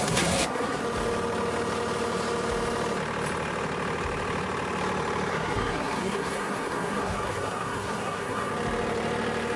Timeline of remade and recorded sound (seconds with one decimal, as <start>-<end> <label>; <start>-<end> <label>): 0.0-0.8 remade; 0.8-5.3 recorded; 5.3-8.5 remade; 8.5-9.6 recorded